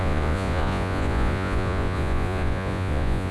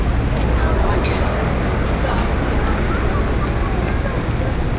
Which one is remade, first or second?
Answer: first